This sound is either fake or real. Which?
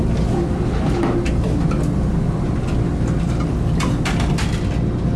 real